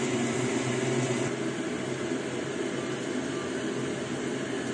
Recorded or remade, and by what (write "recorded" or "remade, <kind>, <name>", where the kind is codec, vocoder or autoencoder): recorded